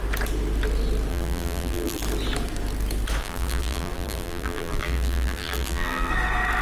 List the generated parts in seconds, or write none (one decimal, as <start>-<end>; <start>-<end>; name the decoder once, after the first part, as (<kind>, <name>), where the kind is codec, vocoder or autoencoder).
1.1-2.0 (vocoder, BigVGAN v2); 3.2-6.1